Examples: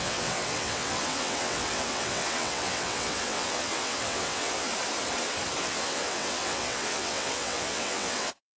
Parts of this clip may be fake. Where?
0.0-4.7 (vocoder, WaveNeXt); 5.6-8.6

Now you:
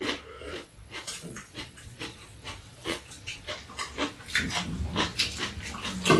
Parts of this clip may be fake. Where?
0.5-3.5 (vocoder, Vocos)

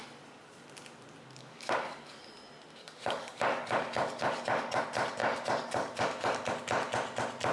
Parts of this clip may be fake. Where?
1.4-2.3 (codec, DAC); 2.8-4.8; 5.2-6.5